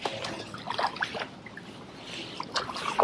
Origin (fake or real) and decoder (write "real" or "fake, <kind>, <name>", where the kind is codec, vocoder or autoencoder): real